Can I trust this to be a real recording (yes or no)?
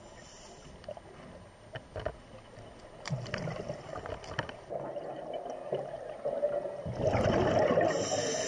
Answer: yes